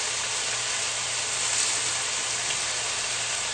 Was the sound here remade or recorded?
recorded